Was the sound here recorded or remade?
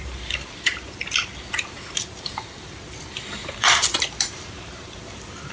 remade